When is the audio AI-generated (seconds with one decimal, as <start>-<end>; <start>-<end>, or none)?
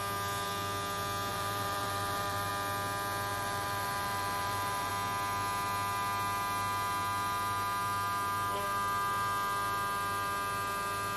1.3-2.5; 3.3-4.9